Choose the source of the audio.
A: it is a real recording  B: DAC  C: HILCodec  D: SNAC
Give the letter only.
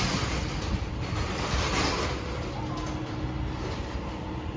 A